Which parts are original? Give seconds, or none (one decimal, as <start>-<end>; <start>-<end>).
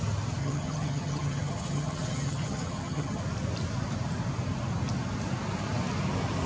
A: 0.0-0.4; 3.2-6.5